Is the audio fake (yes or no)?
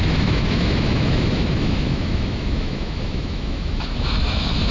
yes